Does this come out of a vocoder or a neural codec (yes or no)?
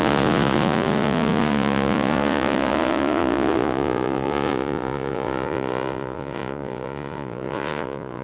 yes